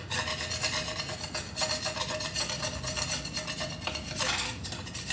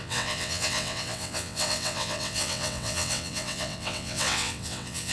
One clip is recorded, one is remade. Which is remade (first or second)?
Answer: second